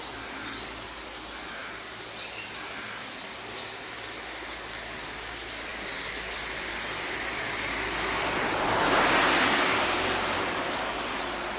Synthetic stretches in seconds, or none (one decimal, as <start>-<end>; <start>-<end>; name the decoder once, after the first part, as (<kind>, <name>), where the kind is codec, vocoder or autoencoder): none